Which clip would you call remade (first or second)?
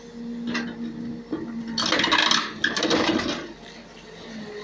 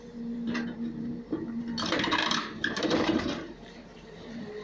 second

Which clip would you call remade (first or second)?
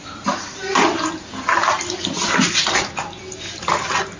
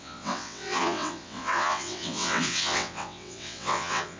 second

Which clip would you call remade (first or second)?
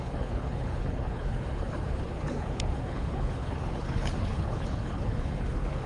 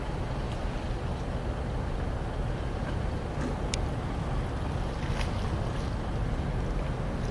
first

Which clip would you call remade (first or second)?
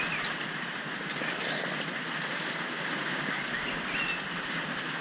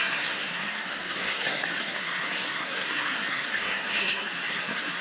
second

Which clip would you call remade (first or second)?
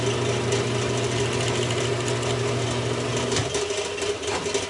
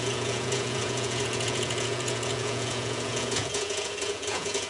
second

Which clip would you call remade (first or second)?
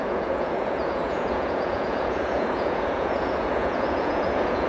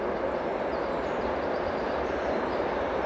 first